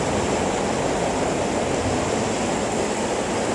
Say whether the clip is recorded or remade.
recorded